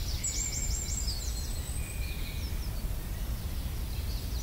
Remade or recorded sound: recorded